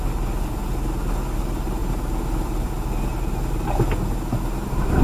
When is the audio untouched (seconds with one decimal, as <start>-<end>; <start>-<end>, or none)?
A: 0.0-5.0